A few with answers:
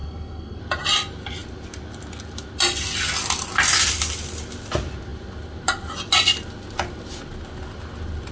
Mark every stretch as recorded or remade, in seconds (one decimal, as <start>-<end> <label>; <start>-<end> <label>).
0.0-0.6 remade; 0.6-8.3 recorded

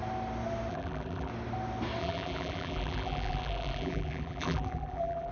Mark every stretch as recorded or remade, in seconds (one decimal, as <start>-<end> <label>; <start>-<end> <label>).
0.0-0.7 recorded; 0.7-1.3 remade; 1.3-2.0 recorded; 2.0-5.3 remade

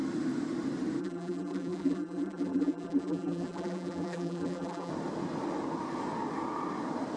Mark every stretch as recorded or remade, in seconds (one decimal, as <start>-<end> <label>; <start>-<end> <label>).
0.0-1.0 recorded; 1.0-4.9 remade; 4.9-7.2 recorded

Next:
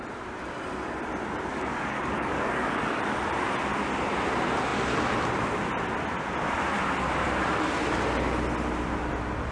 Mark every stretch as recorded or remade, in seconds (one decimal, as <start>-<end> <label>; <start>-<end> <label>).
0.0-1.5 recorded; 1.5-3.0 remade; 3.0-9.5 recorded

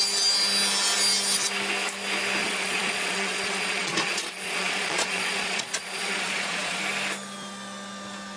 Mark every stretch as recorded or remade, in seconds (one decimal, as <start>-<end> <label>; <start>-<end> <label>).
0.0-2.4 recorded; 2.4-6.8 remade; 6.8-8.4 recorded

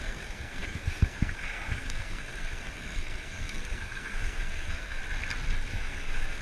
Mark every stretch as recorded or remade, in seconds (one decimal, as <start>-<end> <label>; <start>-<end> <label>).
0.0-5.0 remade; 5.0-5.7 recorded; 5.7-6.4 remade